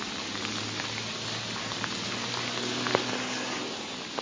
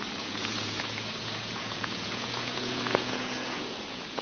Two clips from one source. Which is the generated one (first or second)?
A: second